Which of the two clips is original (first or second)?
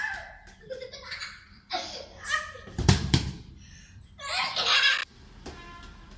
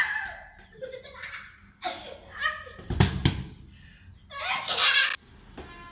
second